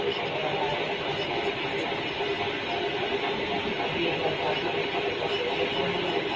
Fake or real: real